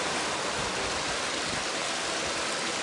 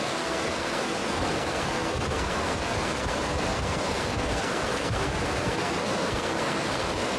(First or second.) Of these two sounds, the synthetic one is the second